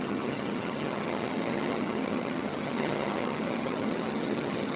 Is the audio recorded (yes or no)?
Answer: no